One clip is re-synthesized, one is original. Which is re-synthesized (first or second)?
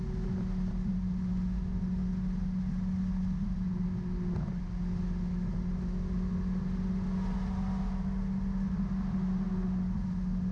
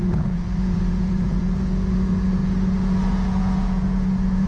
second